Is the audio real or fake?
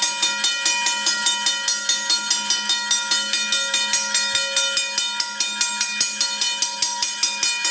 real